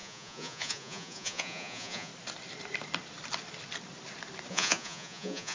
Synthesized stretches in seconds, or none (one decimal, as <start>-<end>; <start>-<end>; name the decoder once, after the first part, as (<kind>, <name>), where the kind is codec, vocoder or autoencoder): 0.0-2.1 (vocoder, Vocos); 4.5-5.5